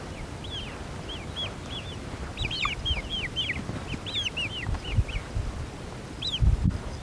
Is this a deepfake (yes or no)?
no